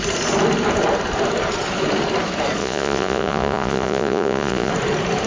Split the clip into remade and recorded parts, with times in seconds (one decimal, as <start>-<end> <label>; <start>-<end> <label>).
0.0-2.6 recorded; 2.6-4.7 remade; 4.7-5.3 recorded

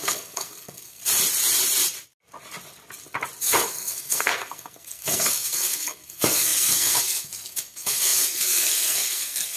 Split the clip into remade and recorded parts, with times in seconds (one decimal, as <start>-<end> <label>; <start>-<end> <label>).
0.0-1.0 remade; 1.0-3.4 recorded; 3.4-9.6 remade